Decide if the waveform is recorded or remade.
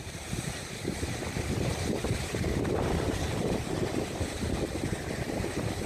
remade